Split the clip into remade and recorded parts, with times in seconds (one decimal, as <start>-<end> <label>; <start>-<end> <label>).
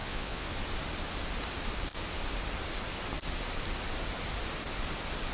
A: 0.0-0.5 remade; 0.5-5.3 recorded